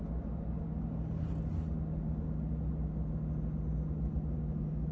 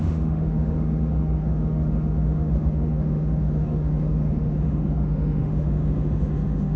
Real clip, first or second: first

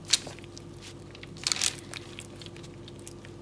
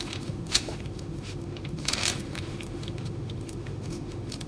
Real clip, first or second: first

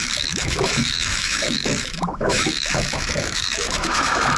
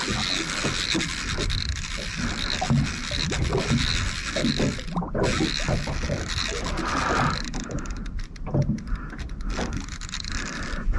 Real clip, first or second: second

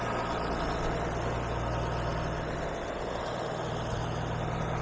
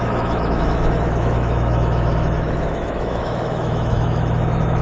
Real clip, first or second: first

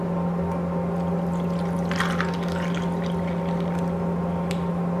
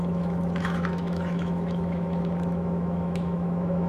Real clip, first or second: first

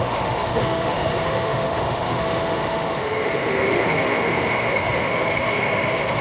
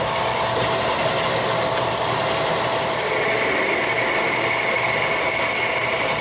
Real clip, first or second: second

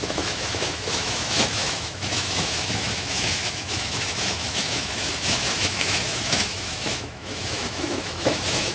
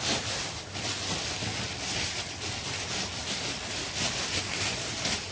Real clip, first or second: second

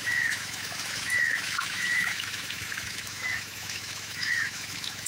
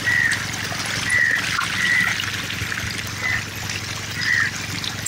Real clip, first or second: second